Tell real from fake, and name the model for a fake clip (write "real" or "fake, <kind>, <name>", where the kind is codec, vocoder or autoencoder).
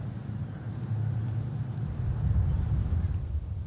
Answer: fake, vocoder, BigVGAN v2